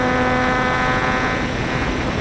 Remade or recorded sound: recorded